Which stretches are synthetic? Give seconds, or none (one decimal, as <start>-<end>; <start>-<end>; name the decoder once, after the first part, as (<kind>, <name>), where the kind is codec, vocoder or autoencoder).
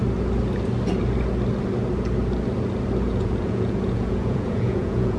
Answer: 3.1-5.2 (vocoder, Vocos)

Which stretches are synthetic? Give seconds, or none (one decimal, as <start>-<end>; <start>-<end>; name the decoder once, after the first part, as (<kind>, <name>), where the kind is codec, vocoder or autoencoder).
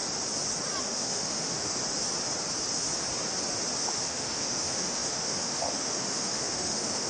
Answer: 0.8-1.7 (autoencoder, DAC-VAE); 3.8-7.1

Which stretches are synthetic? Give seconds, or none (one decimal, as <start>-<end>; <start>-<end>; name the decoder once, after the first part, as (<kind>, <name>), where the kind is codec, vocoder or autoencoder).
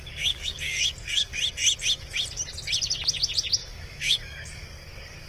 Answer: 0.0-1.4 (codec, DAC); 3.6-5.3